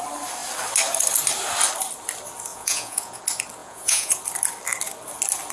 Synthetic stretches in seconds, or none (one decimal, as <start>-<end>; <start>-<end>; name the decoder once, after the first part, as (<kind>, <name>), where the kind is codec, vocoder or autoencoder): 2.5-3.2 (vocoder, Vocos); 3.6-4.2